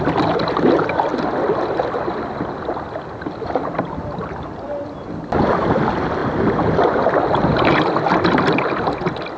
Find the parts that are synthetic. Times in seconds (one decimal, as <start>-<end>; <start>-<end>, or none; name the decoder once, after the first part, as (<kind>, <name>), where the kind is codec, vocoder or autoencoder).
none